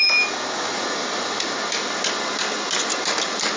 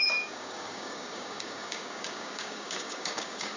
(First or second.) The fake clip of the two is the second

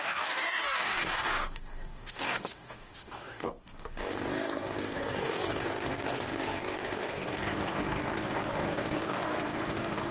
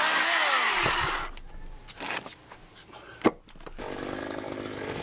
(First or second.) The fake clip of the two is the first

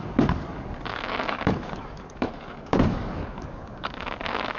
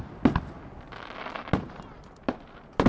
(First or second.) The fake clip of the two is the first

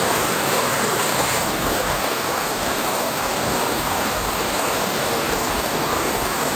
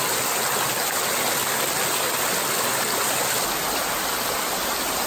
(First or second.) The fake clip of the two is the first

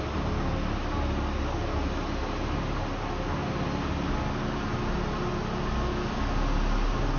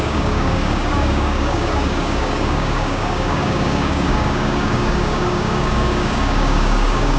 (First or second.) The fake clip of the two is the second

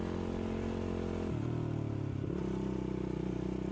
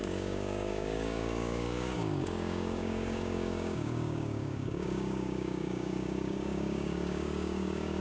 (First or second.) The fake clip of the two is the second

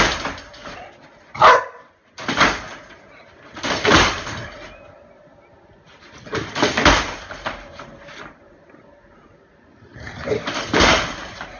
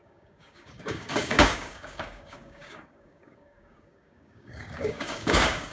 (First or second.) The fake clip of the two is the second